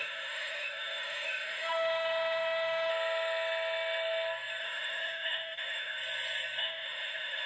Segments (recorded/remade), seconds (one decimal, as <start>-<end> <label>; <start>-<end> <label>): 0.0-2.9 remade; 2.9-4.6 recorded; 4.6-6.0 remade; 6.0-6.6 recorded; 6.6-7.5 remade